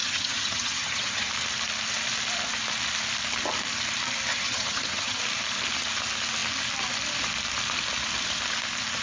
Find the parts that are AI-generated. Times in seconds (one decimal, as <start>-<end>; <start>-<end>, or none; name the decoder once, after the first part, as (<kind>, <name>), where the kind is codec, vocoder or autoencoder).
0.0-1.3 (vocoder, HiFi-GAN); 4.3-5.2